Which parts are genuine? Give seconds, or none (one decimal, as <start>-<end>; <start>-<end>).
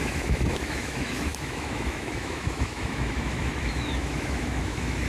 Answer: none